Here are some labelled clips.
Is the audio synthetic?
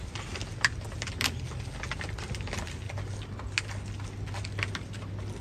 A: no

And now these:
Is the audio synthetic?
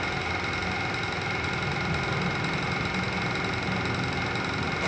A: no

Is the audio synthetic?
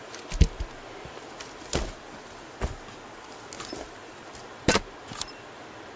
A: no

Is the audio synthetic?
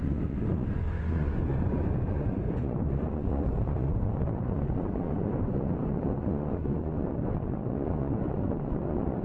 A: yes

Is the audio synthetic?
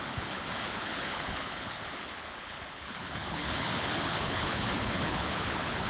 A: yes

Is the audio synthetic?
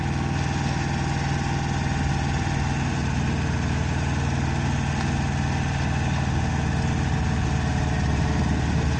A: no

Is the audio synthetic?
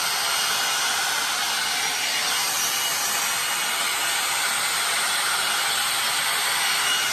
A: no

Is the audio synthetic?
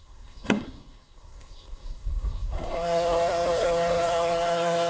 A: yes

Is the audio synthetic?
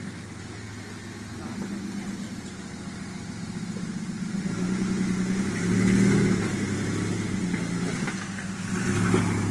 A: no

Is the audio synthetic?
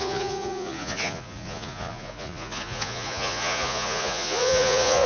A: yes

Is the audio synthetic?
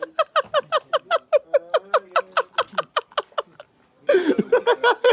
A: no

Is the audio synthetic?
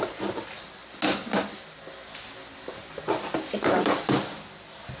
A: no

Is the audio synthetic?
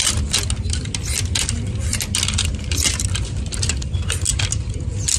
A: no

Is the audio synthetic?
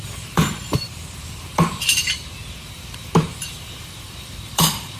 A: yes